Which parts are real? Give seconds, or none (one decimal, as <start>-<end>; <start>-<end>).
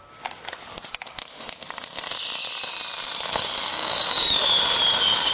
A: 0.0-3.7; 4.4-5.3